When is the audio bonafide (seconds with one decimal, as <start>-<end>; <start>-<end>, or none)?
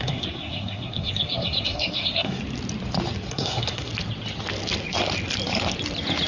2.4-3.3; 3.9-6.3